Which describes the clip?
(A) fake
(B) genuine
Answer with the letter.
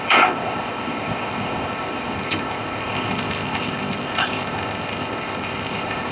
A